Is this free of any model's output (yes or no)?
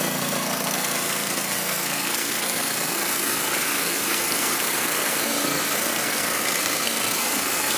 no